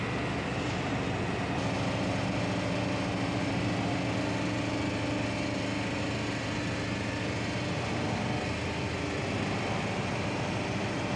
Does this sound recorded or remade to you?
recorded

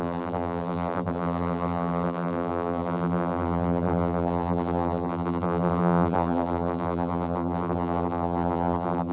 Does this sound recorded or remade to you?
remade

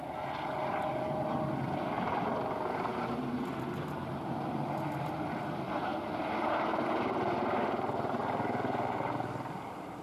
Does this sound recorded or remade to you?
recorded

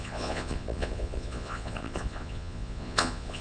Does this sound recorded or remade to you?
remade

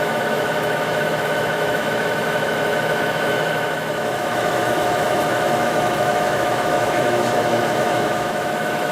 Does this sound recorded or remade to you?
remade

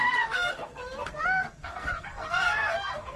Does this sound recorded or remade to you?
remade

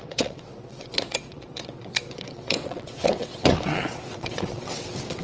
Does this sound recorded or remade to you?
remade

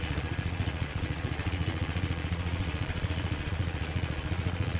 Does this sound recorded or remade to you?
remade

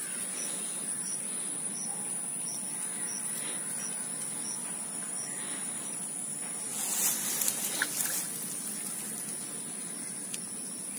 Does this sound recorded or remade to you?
recorded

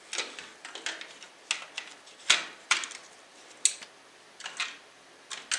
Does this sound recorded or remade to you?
recorded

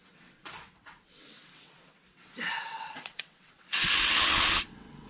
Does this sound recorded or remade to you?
remade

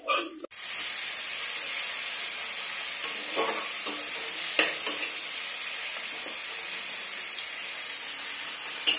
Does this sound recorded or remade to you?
recorded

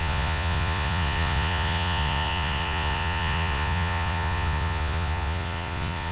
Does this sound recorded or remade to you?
remade